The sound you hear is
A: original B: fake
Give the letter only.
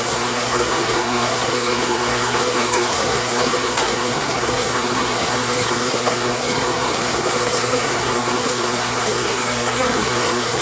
B